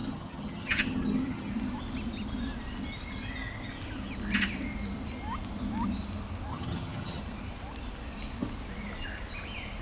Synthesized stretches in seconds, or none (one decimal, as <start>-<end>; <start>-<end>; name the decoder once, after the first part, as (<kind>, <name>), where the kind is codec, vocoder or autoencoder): 0.0-1.5 (vocoder, HiFi-GAN); 6.5-7.2